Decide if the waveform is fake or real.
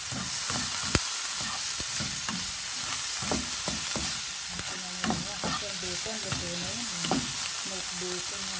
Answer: real